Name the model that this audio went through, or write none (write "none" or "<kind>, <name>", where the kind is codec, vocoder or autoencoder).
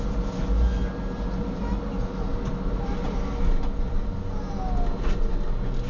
none